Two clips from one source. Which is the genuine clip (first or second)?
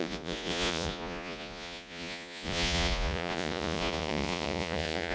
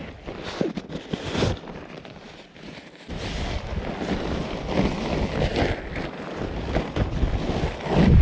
second